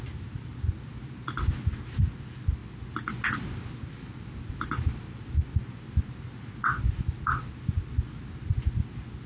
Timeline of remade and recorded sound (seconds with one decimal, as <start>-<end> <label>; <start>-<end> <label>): 0.0-9.3 recorded